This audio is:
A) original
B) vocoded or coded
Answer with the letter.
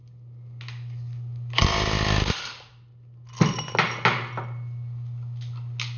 A